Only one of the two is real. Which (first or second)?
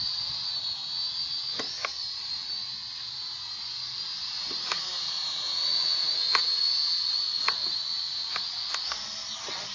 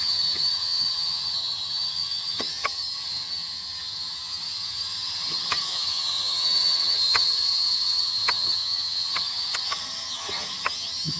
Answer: first